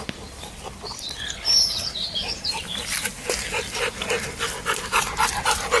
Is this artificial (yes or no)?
no